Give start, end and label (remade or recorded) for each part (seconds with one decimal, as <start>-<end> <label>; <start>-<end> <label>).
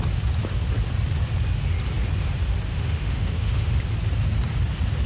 0.0-2.7 recorded; 2.7-3.8 remade; 3.8-5.1 recorded